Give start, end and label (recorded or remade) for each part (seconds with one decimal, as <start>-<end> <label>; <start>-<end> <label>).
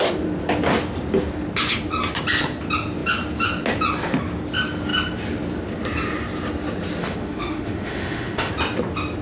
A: 0.0-7.0 recorded; 7.0-8.5 remade; 8.5-9.2 recorded